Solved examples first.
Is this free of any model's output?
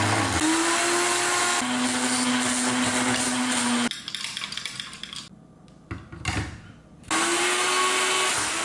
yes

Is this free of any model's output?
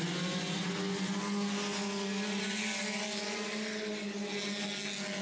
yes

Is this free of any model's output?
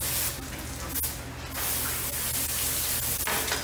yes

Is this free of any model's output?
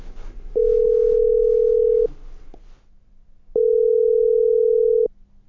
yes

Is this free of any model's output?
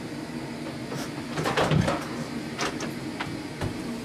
yes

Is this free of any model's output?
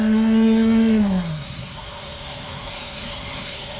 no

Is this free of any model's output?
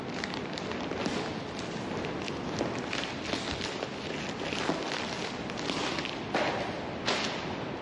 yes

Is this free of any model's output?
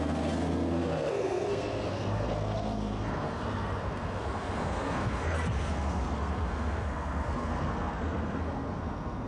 no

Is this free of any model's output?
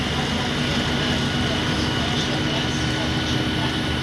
yes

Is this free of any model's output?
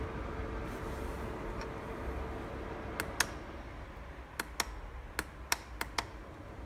yes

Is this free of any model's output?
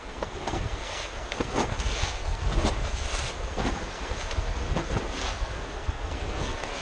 no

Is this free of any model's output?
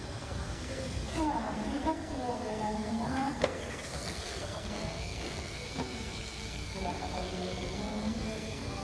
no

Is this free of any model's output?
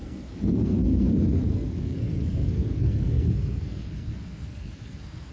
no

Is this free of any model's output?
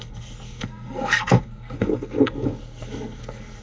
no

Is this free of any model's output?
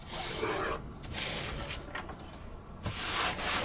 yes